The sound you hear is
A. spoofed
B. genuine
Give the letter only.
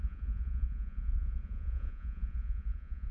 A